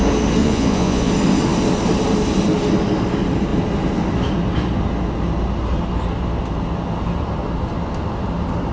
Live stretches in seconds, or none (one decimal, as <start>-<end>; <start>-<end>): 0.0-0.4; 1.1-8.7